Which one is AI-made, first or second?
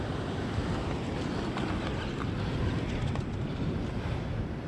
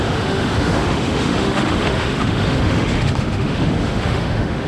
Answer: second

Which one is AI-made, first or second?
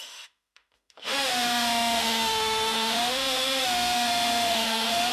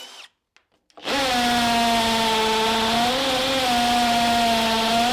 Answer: first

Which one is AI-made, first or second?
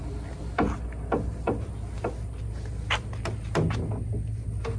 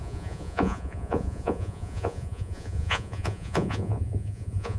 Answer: second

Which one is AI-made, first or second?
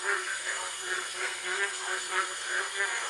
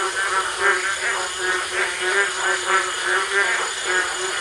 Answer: first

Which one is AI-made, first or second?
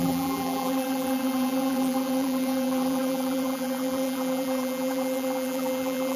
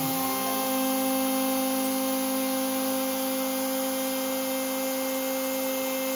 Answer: first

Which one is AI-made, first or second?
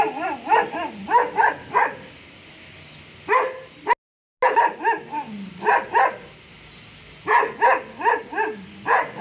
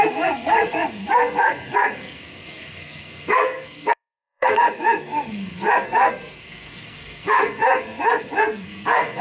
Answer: second